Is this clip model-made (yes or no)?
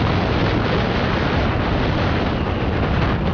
no